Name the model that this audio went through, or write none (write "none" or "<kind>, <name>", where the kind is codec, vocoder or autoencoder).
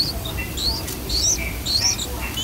none